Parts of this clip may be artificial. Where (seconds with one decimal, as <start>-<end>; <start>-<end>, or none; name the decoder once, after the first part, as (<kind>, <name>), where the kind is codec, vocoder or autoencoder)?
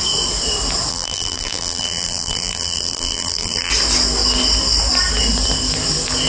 0.9-3.7 (vocoder, BigVGAN v2)